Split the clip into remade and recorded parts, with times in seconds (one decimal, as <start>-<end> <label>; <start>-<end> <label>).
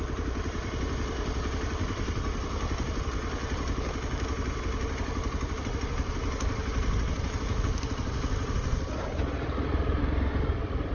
0.0-3.4 remade; 3.4-5.6 recorded; 5.6-6.6 remade; 6.6-9.2 recorded; 9.2-9.7 remade; 9.7-10.4 recorded; 10.4-10.9 remade